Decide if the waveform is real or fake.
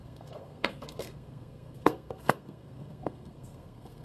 fake